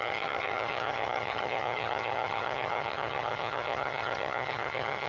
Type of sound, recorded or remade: remade